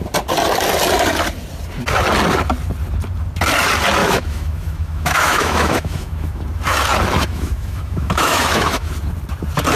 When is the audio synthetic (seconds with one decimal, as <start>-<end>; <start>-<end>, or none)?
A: 4.0-6.4; 7.2-8.9